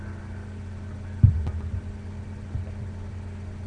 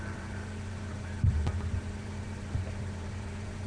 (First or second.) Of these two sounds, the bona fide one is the first